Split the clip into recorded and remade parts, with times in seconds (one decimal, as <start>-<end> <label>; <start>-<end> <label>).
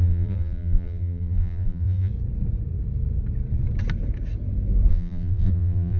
0.0-2.1 remade; 2.1-4.9 recorded; 4.9-6.0 remade